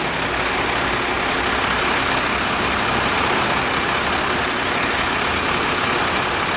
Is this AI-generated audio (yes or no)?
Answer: no